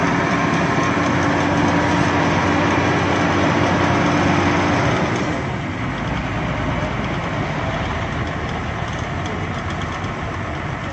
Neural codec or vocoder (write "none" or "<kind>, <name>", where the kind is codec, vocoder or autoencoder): none